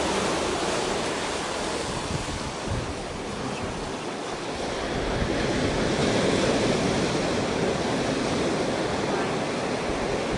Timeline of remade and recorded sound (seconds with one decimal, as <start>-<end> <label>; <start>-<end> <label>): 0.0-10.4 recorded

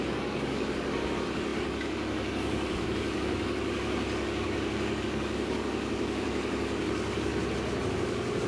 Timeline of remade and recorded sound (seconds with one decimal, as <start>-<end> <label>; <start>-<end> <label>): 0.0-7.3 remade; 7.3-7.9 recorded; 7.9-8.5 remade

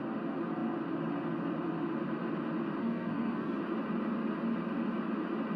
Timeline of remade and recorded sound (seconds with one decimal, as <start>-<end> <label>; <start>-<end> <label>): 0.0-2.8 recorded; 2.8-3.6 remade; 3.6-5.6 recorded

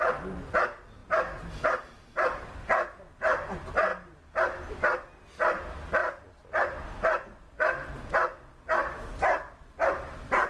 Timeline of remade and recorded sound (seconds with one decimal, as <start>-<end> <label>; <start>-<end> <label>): 0.0-10.5 recorded

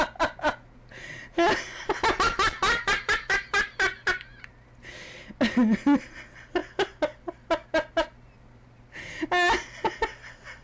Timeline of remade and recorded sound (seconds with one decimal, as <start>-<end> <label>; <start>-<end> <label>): 0.0-10.6 recorded